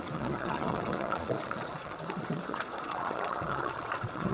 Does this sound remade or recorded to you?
remade